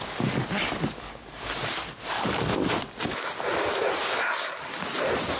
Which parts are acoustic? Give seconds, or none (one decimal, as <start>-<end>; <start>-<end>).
0.0-1.6; 4.8-5.4